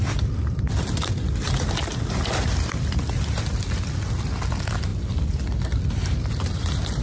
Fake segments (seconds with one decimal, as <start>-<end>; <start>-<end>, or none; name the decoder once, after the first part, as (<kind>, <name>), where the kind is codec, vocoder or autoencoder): none